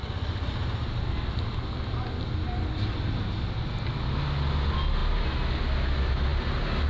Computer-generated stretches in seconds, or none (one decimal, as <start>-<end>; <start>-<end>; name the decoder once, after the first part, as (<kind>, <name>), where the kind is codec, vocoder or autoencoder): none